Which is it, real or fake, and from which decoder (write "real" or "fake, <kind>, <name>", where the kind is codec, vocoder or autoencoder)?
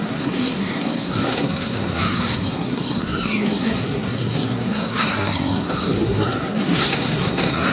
fake, codec, SNAC